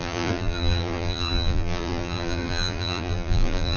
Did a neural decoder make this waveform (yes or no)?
yes